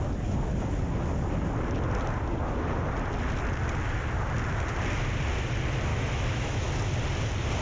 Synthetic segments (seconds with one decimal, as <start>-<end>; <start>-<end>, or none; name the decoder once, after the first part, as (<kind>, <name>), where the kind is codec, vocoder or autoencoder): 5.9-6.7 (autoencoder, DAC-VAE)

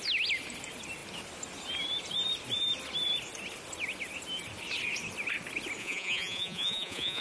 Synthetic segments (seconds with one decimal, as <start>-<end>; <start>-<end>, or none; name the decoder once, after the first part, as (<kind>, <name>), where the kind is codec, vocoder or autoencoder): 5.8-7.2 (vocoder, Vocos)